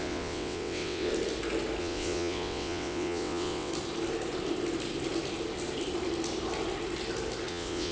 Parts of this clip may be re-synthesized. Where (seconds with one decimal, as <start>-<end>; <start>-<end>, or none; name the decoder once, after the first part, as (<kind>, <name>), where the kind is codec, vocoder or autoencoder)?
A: 0.0-1.1 (vocoder, WaveNeXt); 1.8-3.7; 7.5-7.9